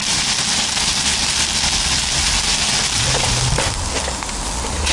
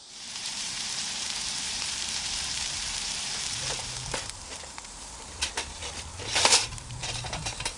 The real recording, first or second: first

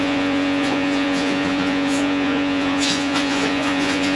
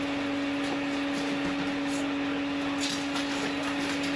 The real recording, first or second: second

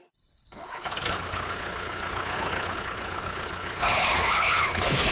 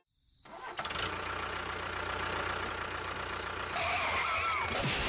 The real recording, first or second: second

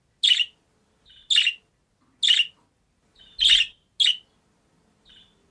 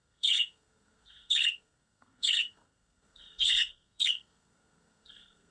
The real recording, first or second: first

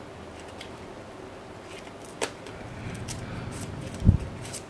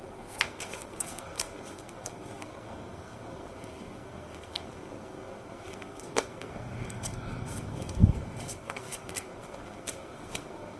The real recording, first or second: first